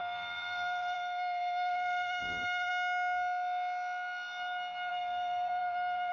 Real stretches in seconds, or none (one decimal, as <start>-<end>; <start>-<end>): 2.7-4.9